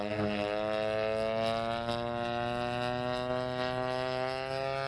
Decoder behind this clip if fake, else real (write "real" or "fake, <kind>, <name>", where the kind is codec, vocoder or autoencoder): real